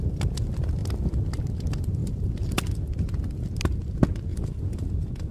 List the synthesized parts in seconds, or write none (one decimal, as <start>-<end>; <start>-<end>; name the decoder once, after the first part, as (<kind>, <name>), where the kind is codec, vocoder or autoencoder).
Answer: 4.3-5.3 (vocoder, Vocos)